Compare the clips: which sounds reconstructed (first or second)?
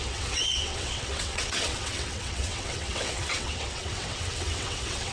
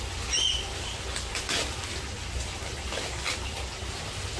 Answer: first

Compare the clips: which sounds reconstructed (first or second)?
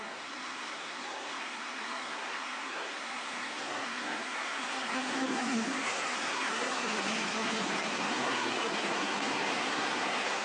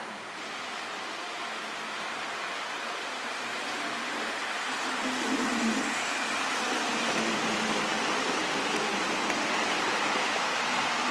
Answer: first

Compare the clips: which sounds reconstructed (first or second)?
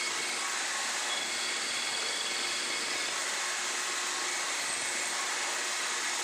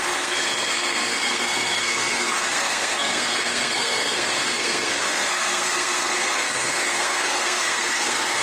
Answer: second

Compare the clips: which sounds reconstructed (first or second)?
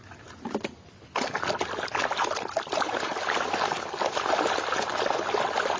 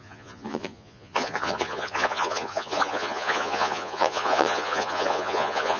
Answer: second